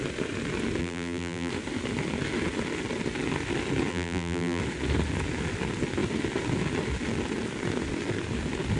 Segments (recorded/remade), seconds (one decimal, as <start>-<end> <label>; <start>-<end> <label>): 0.0-0.8 recorded; 0.8-1.5 remade; 1.5-3.9 recorded; 3.9-4.6 remade; 4.6-8.8 recorded